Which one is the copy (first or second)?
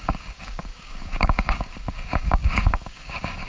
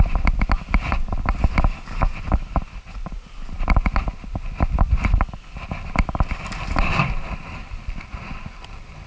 first